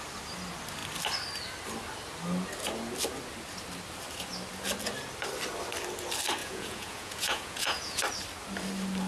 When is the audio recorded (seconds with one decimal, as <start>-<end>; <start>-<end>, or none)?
0.0-6.4; 8.0-9.1